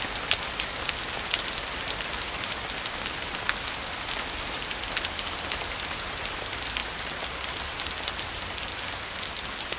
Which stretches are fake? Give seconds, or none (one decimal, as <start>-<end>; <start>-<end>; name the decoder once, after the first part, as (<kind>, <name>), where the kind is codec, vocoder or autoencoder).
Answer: none

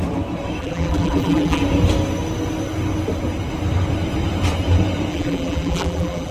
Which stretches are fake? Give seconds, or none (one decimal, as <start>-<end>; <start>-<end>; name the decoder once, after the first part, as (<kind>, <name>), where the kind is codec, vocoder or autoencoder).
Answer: 0.6-1.6 (vocoder, BigVGAN v2); 5.1-6.3

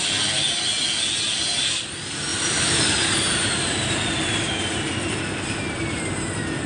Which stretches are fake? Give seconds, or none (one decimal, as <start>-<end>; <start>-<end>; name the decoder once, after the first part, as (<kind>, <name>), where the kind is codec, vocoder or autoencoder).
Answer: 2.3-6.0 (vocoder, BigVGAN v2)

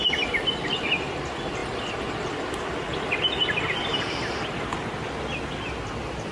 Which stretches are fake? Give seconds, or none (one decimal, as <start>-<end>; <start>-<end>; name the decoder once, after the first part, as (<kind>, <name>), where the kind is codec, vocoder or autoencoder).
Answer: none

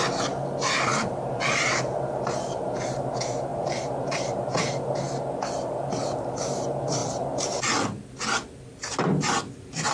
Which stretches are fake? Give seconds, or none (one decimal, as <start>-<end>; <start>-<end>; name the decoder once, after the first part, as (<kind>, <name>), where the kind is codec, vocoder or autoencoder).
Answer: 0.9-1.7 (vocoder, BigVGAN v2); 3.5-4.7